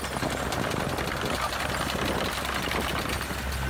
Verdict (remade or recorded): recorded